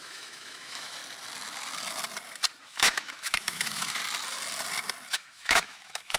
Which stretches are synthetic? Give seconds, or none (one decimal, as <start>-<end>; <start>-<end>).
0.0-1.0; 2.6-4.0; 5.1-6.2